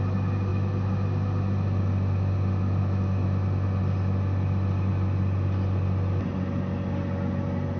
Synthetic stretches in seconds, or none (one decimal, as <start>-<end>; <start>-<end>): none